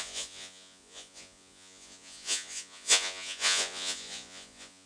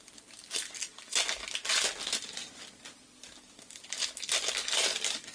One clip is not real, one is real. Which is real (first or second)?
second